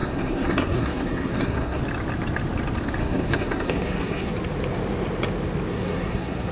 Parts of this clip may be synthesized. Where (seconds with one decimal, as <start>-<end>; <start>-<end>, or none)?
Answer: 0.0-1.8; 3.0-4.3; 5.7-6.5